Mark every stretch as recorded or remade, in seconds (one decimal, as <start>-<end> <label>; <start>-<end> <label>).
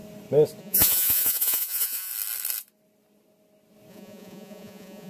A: 0.0-0.6 recorded; 0.6-2.1 remade; 2.1-3.9 recorded; 3.9-5.1 remade